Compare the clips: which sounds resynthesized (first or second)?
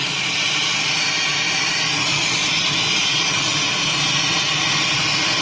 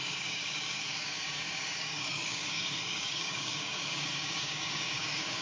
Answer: second